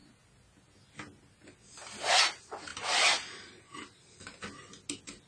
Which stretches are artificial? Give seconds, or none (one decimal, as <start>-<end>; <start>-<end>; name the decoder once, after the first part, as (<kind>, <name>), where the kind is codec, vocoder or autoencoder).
none